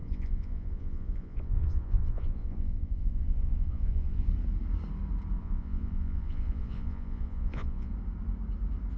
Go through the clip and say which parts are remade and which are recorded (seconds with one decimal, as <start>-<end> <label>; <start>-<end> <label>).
0.0-4.3 remade; 4.3-5.4 recorded; 5.4-7.9 remade; 7.9-9.0 recorded